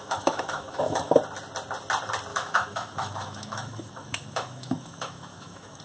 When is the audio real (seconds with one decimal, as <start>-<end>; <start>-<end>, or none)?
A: 1.2-2.3